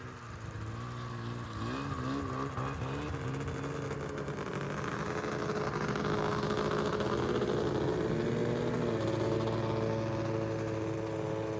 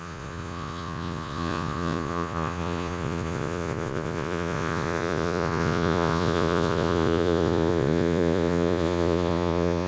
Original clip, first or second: first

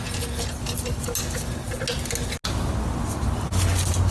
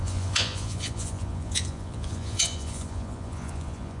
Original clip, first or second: first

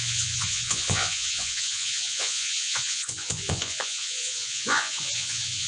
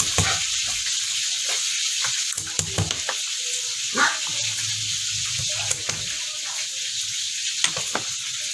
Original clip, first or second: second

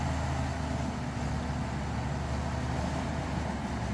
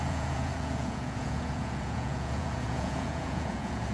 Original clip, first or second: first